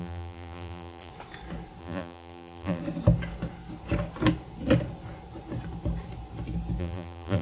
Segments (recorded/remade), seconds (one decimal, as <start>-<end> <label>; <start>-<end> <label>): 0.0-1.1 remade; 1.1-1.8 recorded; 1.8-2.8 remade; 2.8-6.8 recorded; 6.8-7.4 remade